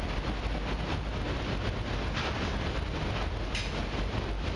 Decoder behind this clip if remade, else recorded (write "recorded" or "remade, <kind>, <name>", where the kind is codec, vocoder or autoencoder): recorded